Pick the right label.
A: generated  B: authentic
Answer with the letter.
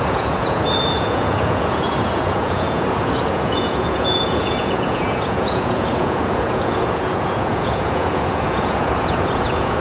A